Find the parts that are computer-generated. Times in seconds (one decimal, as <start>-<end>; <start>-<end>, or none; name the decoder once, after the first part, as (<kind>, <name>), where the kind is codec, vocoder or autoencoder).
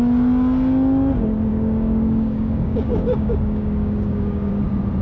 1.5-4.5 (codec, DAC)